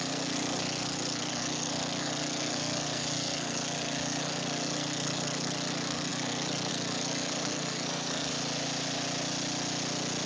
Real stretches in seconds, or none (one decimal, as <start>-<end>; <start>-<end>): 8.3-10.3